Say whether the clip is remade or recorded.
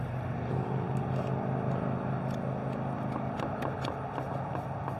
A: recorded